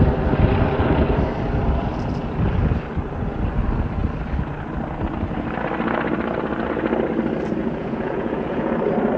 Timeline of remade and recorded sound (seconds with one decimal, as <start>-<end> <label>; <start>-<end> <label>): 0.0-7.6 recorded; 7.6-8.7 remade; 8.7-9.2 recorded